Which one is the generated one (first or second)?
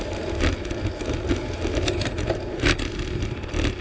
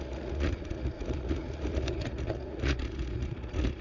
second